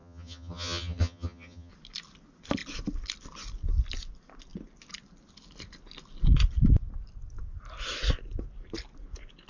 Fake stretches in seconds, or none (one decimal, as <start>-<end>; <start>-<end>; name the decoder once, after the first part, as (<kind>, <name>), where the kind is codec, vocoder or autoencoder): 0.0-1.7 (vocoder, HiFi-GAN)